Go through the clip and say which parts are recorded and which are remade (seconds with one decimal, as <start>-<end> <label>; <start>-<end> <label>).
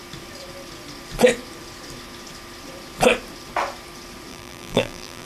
0.0-4.3 recorded; 4.3-5.3 remade